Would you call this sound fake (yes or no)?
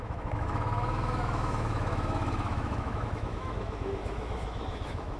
yes